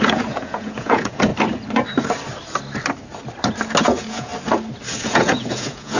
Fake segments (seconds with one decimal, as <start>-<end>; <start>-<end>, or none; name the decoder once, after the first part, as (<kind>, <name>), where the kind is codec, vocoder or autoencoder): 0.0-1.3 (vocoder, Vocos); 3.8-4.3; 5.0-6.0